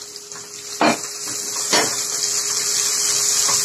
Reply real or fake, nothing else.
real